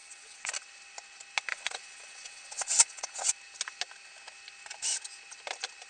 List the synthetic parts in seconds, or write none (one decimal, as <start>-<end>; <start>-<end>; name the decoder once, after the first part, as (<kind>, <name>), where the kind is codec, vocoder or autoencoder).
0.0-0.5 (vocoder, WaveNeXt); 1.5-3.3